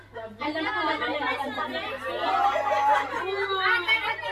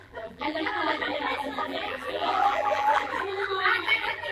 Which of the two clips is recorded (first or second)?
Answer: first